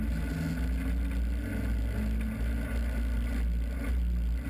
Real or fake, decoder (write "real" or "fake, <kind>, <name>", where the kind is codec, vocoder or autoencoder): real